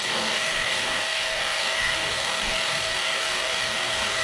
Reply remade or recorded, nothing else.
remade